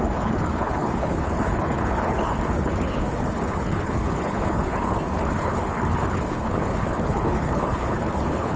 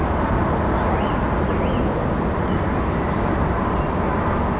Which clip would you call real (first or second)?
second